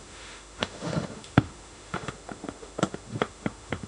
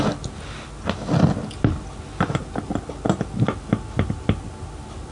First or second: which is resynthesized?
first